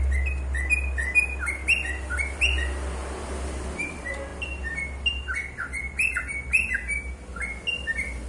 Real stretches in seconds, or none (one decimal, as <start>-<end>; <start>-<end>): 0.0-8.3